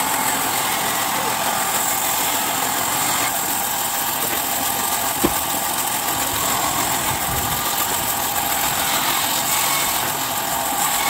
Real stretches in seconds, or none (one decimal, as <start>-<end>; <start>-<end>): 0.0-11.1